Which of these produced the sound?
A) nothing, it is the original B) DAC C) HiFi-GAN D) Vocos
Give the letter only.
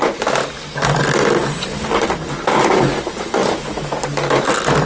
A